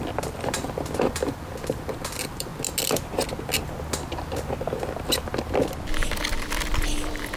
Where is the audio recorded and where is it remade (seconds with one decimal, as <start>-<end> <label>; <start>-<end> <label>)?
0.0-2.5 remade; 2.5-6.2 recorded; 6.2-7.4 remade